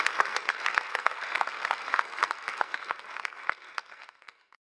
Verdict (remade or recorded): remade